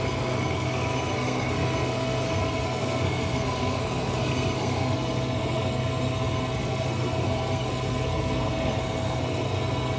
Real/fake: fake